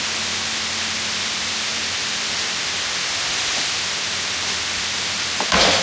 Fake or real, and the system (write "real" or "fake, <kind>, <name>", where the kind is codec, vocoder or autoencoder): real